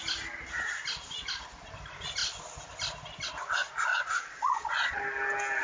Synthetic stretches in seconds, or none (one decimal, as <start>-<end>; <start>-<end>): 3.9-5.0